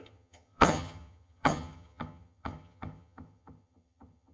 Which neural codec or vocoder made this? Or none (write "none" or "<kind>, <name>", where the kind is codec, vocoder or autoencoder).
vocoder, HiFi-GAN